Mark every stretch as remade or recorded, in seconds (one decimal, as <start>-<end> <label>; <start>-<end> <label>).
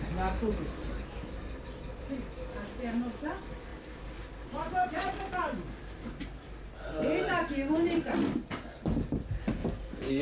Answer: 0.0-10.2 recorded